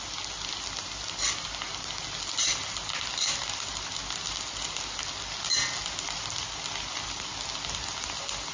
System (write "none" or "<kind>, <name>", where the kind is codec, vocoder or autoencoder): none